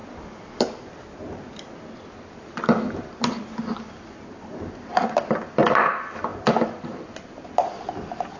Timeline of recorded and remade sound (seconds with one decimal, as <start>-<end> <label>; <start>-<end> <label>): 0.0-8.4 remade